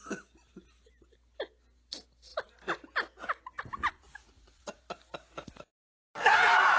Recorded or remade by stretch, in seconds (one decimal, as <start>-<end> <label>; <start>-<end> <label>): 0.0-4.2 recorded; 4.2-4.8 remade; 4.8-6.8 recorded